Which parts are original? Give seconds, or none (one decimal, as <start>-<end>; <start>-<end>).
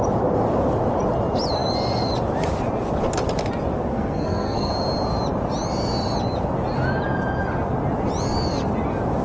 0.0-3.9; 4.7-9.2